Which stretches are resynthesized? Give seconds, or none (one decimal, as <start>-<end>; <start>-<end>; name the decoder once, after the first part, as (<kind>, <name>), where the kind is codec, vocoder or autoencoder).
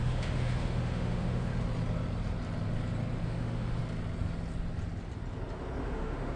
0.0-1.5 (autoencoder, DAC-VAE); 3.2-3.8; 5.8-6.4